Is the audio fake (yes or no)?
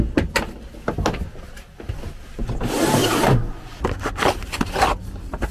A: no